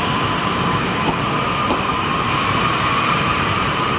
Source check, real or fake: fake